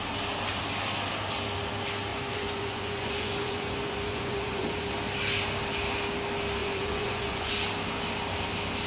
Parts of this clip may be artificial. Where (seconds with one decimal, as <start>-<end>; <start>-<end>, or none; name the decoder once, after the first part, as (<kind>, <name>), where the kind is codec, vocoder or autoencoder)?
2.1-4.9 (vocoder, Vocos); 6.6-7.5

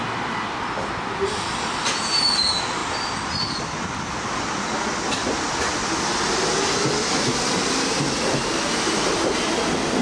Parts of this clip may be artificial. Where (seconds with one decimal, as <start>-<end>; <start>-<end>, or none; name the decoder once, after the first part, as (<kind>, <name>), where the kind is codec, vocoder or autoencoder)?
none